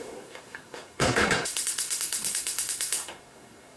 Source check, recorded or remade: remade